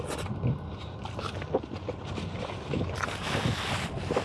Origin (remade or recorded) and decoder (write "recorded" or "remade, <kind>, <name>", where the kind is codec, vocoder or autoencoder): recorded